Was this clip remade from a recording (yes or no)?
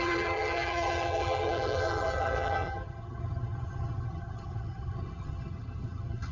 yes